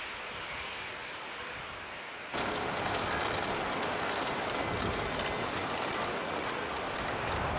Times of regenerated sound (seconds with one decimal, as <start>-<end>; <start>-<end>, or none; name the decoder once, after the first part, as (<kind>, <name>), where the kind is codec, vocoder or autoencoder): 6.2-6.8 (vocoder, Vocos)